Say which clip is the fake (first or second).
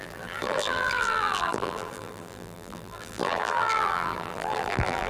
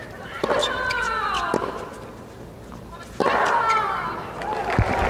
first